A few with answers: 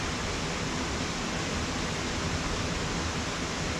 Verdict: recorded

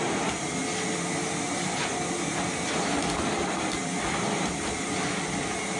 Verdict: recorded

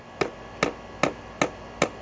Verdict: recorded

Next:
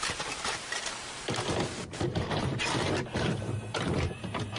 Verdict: remade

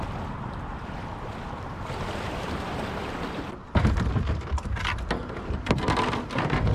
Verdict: remade